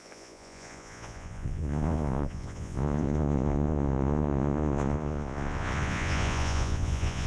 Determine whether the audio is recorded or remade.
remade